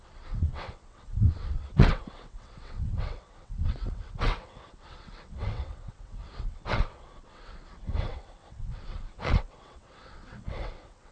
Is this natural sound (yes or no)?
no